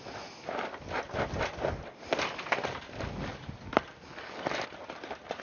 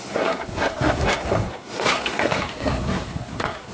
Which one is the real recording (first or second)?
first